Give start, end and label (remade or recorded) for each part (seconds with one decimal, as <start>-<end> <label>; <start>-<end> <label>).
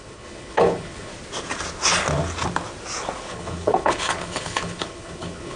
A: 0.0-1.1 remade; 1.1-3.2 recorded; 3.2-5.6 remade